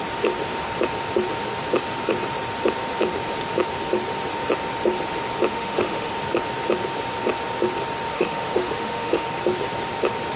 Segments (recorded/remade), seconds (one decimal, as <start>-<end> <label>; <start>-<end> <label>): 0.0-5.5 recorded; 5.5-6.1 remade; 6.1-8.1 recorded; 8.1-9.3 remade; 9.3-10.4 recorded